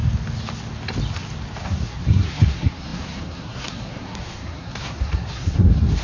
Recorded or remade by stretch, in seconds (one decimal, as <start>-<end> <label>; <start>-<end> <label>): 0.0-1.6 recorded; 1.6-6.0 remade

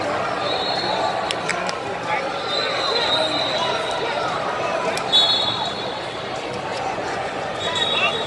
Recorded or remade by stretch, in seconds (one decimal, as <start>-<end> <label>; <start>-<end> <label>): 0.0-6.7 recorded; 6.7-7.6 remade; 7.6-8.3 recorded

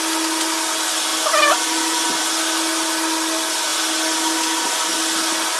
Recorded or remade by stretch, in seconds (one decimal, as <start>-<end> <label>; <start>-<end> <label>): 0.0-5.6 recorded

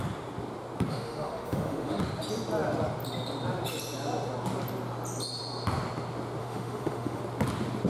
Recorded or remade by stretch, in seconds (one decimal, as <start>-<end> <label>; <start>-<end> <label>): 0.0-0.9 recorded; 0.9-2.0 remade; 2.0-6.4 recorded; 6.4-7.2 remade; 7.2-7.9 recorded